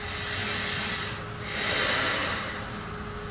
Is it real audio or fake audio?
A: real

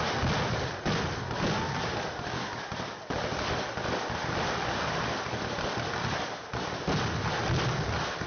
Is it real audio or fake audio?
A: fake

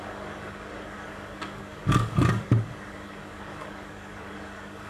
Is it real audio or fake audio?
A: fake